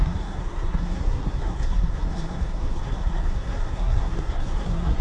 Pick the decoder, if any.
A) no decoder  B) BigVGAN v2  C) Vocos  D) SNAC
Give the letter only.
D